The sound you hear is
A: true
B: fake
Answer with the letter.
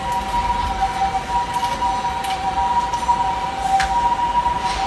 A